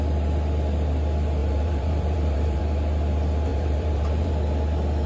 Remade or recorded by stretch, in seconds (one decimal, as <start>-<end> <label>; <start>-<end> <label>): 0.0-1.4 recorded; 1.4-2.6 remade; 2.6-3.5 recorded; 3.5-4.3 remade; 4.3-5.1 recorded